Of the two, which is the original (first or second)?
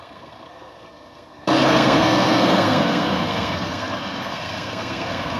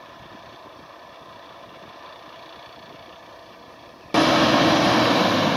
second